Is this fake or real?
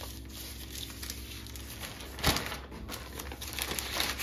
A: real